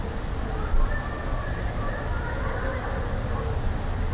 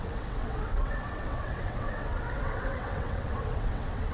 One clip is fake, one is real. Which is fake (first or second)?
second